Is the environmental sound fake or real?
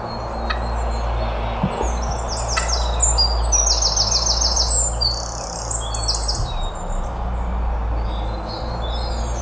real